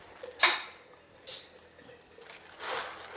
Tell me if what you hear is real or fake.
real